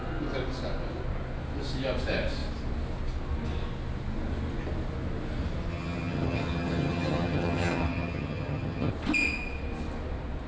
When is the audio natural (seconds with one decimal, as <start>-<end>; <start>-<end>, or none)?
0.0-5.7; 8.9-10.5